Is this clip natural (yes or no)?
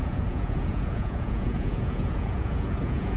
no